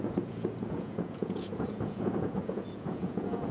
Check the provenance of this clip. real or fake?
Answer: fake